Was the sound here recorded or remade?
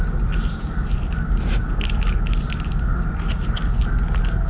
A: recorded